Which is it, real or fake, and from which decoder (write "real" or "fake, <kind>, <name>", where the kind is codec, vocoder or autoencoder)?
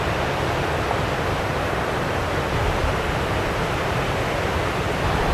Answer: real